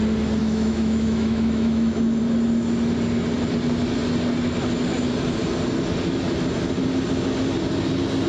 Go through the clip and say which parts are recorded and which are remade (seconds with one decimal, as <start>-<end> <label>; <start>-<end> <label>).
0.0-0.4 recorded; 0.4-2.2 remade; 2.2-8.3 recorded